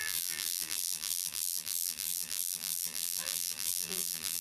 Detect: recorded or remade remade